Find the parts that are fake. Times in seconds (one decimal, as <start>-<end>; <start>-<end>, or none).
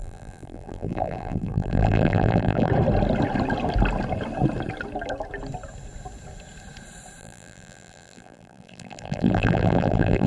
0.0-2.7; 7.2-10.3